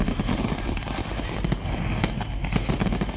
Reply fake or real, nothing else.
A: real